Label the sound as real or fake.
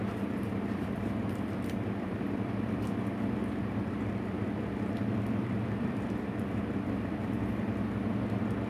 fake